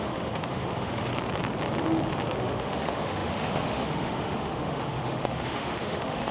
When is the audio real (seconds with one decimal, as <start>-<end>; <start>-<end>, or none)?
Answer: 1.1-2.4